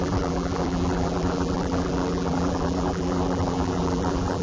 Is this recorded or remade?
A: remade